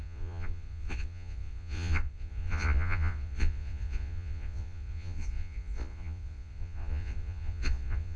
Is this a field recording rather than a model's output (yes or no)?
no